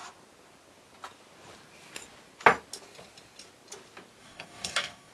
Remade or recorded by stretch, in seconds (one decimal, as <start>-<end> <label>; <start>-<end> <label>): 0.0-4.2 recorded; 4.2-5.1 remade